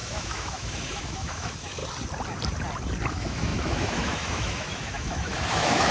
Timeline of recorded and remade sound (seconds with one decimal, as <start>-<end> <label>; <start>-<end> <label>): 0.0-1.8 remade; 1.8-3.1 recorded; 3.1-5.9 remade